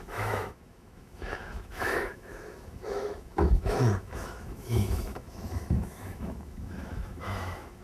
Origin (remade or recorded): remade